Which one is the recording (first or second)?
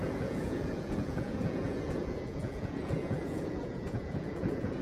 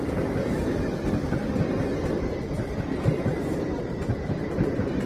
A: second